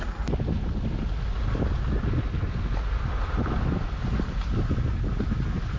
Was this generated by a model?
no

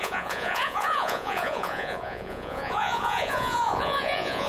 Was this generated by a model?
yes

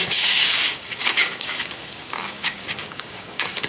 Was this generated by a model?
yes